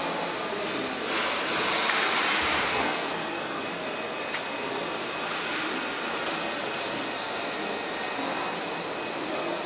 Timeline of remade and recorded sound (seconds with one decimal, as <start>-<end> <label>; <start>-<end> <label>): 0.0-2.7 recorded; 2.7-3.6 remade; 3.6-9.7 recorded